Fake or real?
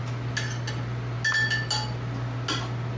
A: real